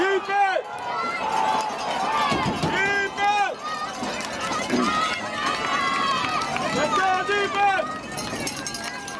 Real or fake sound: real